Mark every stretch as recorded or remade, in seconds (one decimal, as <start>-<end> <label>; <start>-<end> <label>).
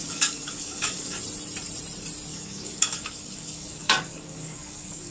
0.0-1.2 remade; 1.2-2.3 recorded; 2.3-5.1 remade